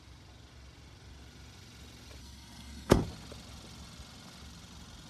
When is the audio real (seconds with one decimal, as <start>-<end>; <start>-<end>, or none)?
0.0-2.2; 3.0-5.1